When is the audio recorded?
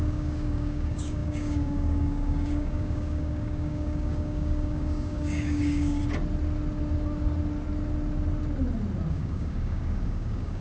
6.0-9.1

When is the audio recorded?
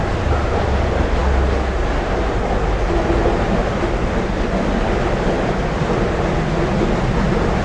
0.0-7.6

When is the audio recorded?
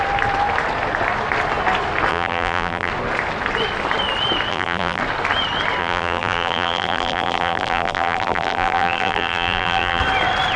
0.0-2.1; 2.9-4.5; 5.0-5.8; 10.0-10.6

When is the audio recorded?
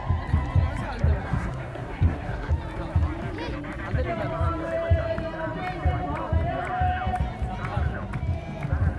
0.0-1.2; 2.5-9.0